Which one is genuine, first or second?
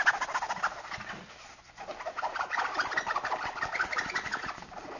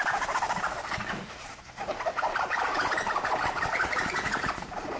first